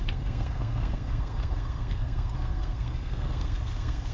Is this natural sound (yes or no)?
no